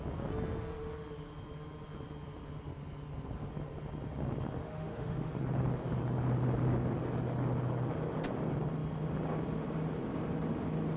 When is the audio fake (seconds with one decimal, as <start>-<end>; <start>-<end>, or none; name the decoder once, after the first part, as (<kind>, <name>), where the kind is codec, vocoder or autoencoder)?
4.6-5.3 (autoencoder, DAC-VAE)